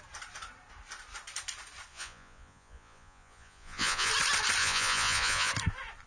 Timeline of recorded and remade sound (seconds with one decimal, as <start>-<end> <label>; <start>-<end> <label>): 0.0-1.9 recorded; 1.9-4.1 remade; 4.1-4.6 recorded; 4.6-5.5 remade; 5.5-6.1 recorded